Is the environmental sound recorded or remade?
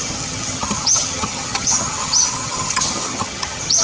remade